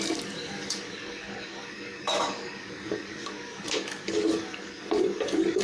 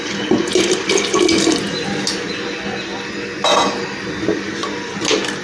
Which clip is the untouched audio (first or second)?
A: second